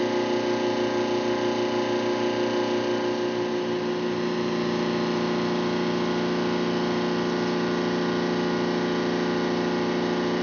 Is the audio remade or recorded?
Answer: recorded